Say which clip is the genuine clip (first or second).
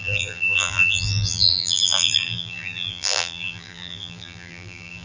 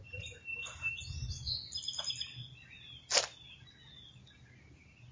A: second